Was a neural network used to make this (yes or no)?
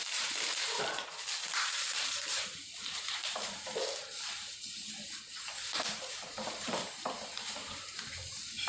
yes